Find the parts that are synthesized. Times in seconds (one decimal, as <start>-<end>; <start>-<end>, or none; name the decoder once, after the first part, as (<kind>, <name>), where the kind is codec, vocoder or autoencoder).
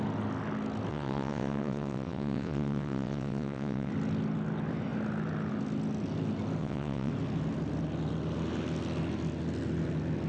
0.9-3.9 (vocoder, WaveNeXt); 6.6-7.1